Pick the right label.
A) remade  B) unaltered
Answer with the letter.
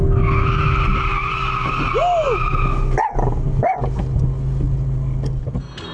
B